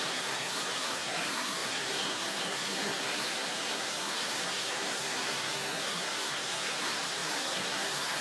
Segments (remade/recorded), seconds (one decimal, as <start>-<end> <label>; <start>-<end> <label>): 0.0-8.2 remade